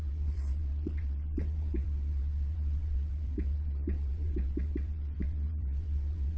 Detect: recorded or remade remade